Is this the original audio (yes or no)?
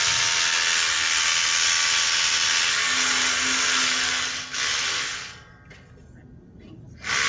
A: yes